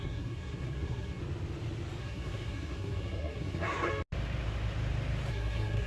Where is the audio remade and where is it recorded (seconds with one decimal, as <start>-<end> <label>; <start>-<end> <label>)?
0.0-1.2 remade; 1.2-2.0 recorded; 2.0-3.9 remade; 3.9-5.3 recorded; 5.3-5.9 remade